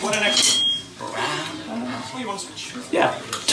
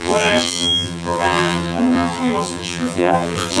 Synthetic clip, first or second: second